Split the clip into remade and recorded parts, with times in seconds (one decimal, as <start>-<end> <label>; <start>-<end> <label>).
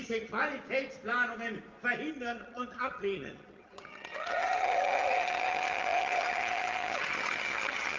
0.0-0.4 remade; 0.4-2.1 recorded; 2.1-8.0 remade